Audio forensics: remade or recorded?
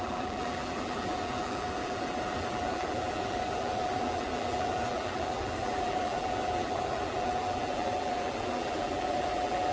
remade